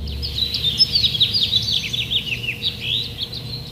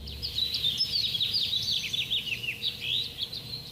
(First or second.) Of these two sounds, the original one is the first